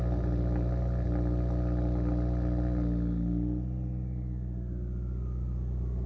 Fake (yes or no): no